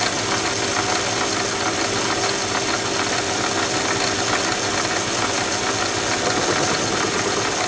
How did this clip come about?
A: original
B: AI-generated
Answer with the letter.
A